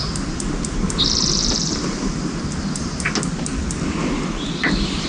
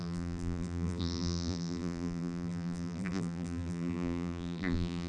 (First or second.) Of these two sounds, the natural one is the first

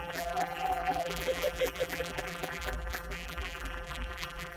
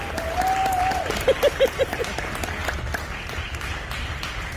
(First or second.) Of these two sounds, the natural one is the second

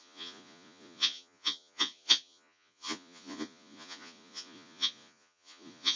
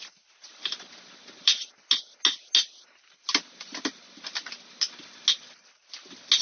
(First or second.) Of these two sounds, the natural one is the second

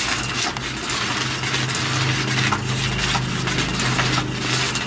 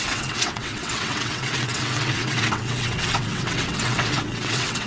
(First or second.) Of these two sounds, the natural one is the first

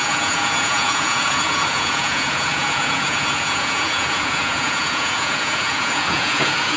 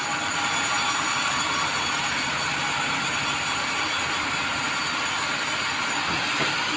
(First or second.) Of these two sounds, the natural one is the second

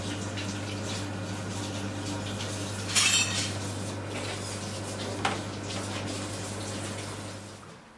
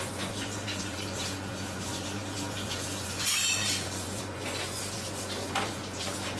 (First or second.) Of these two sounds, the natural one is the first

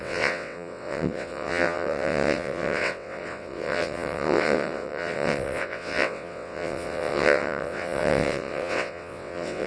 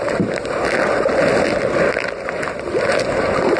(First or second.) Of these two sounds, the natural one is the second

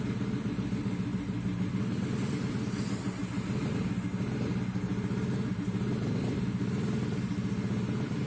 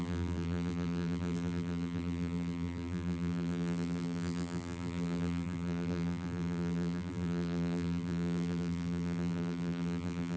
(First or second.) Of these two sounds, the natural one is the first